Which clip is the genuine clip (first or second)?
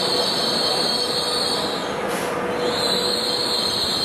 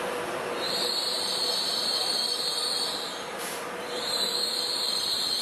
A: first